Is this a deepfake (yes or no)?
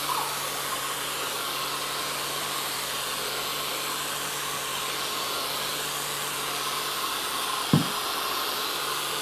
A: no